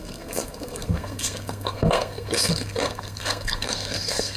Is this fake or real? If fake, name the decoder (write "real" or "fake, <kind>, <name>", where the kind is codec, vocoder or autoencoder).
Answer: fake, codec, SNAC